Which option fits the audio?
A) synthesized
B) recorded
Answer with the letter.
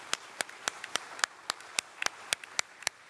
A